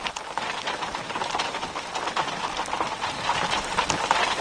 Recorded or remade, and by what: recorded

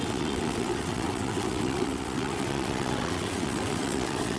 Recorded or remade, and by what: remade, vocoder, WaveNeXt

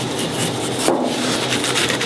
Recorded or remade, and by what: recorded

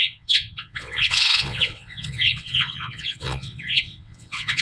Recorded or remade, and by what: remade, vocoder, WaveNeXt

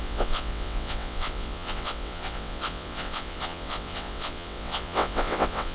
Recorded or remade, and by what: remade, vocoder, WaveNeXt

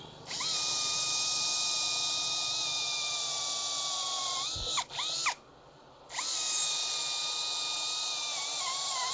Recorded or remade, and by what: recorded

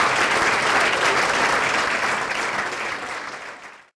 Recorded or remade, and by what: recorded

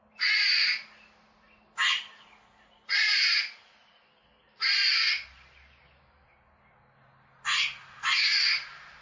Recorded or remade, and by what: recorded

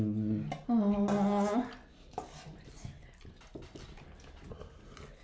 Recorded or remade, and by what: recorded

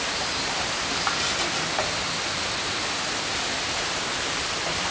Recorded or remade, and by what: recorded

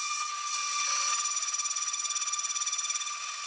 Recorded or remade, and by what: remade, vocoder, WaveNeXt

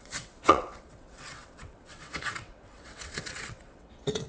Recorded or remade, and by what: remade, vocoder, WaveNeXt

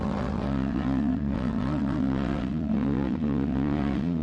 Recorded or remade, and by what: remade, vocoder, WaveNeXt